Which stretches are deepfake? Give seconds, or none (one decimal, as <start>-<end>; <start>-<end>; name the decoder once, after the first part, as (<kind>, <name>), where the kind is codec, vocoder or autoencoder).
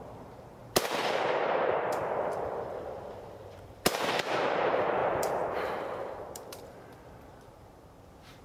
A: 0.0-8.4 (vocoder, BigVGAN v2)